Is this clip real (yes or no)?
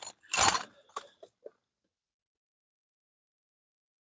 yes